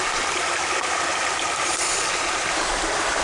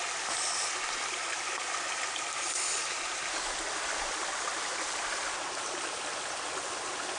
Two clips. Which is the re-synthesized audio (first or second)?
first